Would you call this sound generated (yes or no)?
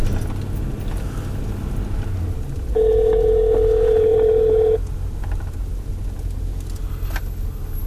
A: no